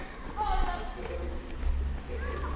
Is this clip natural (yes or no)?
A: yes